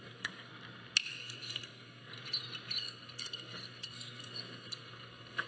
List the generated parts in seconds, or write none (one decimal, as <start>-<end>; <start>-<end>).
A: 0.0-0.5; 1.1-2.1; 2.8-5.5